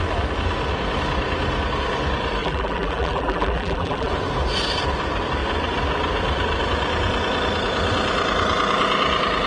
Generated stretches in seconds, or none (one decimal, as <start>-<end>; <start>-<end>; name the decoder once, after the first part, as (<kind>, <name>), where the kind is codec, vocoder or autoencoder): 2.4-4.1 (vocoder, BigVGAN v2)